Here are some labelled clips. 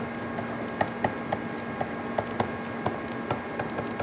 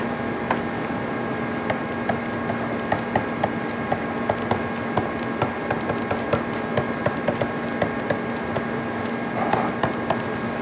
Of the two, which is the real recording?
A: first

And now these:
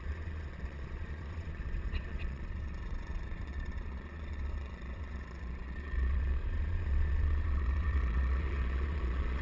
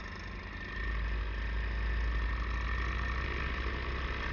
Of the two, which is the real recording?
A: second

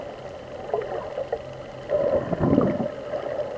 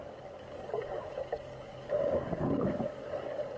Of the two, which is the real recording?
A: first